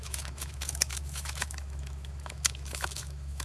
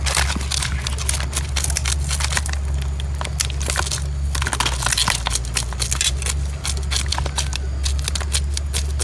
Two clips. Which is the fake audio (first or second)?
first